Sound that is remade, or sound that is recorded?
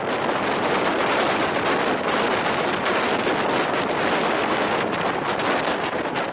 recorded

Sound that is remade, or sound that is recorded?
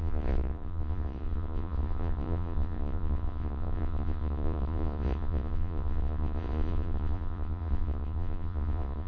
remade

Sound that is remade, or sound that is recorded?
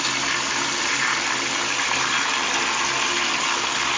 recorded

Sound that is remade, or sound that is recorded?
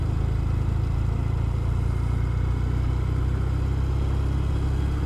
recorded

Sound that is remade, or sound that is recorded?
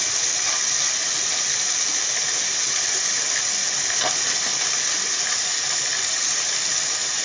recorded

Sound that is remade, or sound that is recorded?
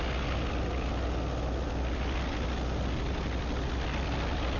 recorded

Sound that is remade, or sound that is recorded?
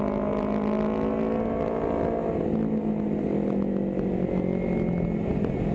recorded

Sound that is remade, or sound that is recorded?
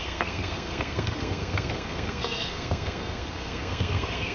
remade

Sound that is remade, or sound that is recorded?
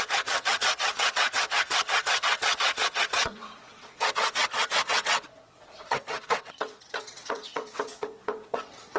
remade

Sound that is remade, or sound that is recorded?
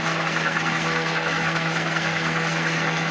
remade